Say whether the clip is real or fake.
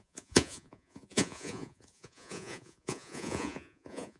fake